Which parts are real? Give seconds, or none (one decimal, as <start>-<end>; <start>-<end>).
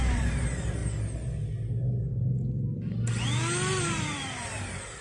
0.8-3.8